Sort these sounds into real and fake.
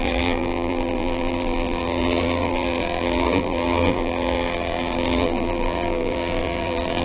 fake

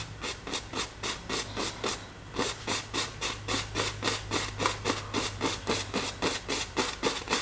real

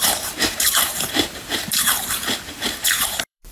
fake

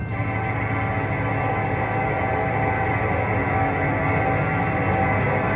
real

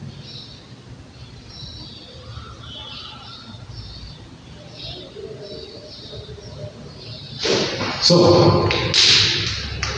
real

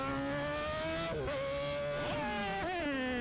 real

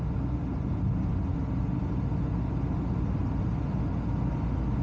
real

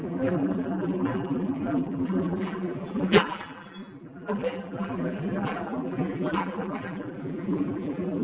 fake